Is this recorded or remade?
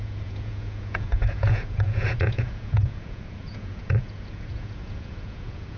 remade